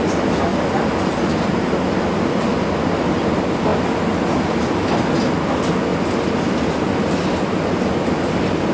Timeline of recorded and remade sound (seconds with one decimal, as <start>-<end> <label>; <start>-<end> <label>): 0.0-8.7 recorded